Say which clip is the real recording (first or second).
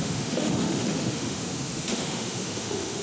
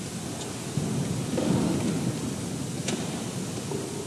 second